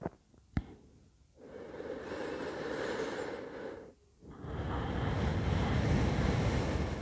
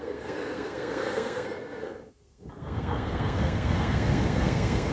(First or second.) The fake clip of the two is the second